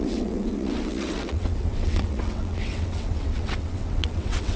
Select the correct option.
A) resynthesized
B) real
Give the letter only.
A